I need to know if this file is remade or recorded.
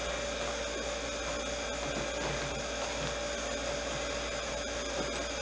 recorded